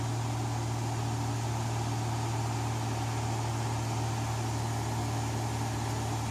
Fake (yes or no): no